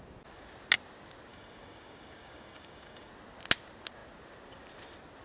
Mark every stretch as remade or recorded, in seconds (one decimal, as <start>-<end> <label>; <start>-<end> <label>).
0.0-1.3 recorded; 1.3-3.1 remade; 3.1-5.2 recorded